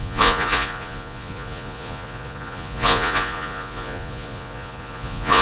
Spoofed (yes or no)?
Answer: yes